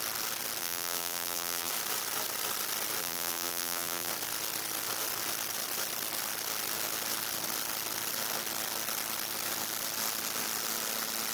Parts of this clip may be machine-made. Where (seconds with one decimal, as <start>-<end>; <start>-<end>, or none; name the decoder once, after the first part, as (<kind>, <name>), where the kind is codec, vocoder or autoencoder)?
0.6-1.7 (vocoder, BigVGAN v2); 3.0-4.1

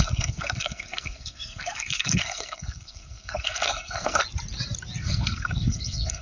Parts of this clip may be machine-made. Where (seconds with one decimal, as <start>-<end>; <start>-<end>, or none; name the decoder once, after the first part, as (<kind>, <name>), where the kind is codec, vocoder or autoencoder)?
0.0-4.2 (codec, SNAC); 5.0-6.2

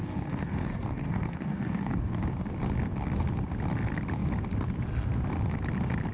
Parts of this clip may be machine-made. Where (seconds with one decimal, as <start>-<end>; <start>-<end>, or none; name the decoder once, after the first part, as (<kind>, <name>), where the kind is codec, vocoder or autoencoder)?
0.0-2.2 (codec, SNAC)

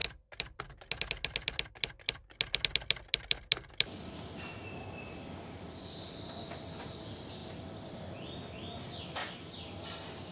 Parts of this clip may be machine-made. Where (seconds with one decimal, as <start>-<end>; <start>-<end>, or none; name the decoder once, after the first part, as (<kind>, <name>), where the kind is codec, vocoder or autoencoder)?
none

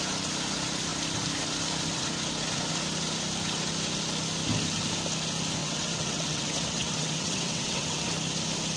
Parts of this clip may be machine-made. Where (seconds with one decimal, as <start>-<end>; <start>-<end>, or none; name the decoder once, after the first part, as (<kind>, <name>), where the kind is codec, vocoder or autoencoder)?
5.6-8.1 (vocoder, WaveNeXt)

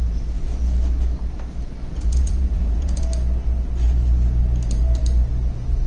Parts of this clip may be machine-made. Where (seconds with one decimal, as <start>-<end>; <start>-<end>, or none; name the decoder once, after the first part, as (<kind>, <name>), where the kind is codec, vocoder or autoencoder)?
1.8-3.0 (vocoder, Vocos)

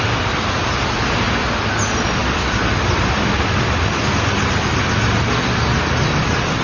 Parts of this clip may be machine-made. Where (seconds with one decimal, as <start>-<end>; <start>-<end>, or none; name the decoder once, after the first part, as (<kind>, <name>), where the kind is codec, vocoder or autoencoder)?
2.2-4.2 (vocoder, BigVGAN v2)

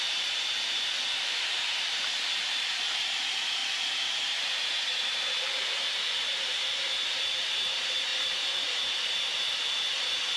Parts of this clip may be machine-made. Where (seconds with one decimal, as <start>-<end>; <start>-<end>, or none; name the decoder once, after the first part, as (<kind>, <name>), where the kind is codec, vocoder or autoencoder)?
0.0-3.6 (vocoder, BigVGAN v2); 5.4-10.4